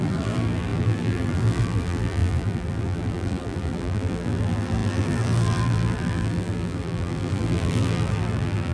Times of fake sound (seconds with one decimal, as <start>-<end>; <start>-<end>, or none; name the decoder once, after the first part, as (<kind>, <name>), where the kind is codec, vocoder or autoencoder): 0.0-8.7 (vocoder, BigVGAN v2)